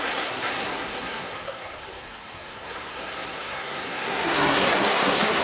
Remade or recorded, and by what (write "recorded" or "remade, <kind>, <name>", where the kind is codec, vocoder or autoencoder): remade, codec, SNAC